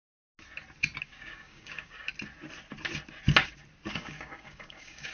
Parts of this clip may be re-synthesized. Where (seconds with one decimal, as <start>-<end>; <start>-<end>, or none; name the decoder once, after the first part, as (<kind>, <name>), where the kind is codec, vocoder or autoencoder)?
1.0-2.1 (codec, DAC); 3.9-5.1